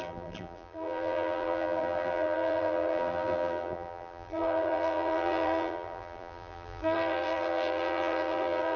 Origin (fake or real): fake